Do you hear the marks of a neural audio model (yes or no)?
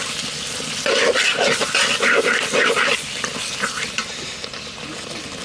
no